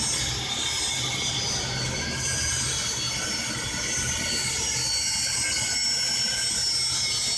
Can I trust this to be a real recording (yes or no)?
yes